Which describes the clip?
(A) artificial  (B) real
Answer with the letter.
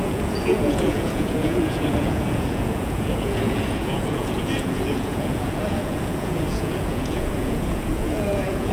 A